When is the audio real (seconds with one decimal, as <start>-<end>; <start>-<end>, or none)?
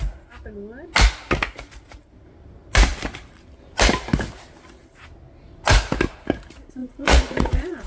0.0-6.8